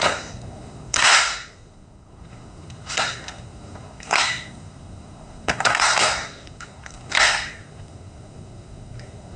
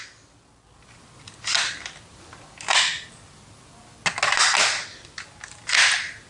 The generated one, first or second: first